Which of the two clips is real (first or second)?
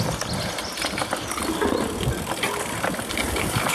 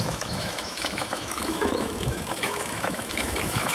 first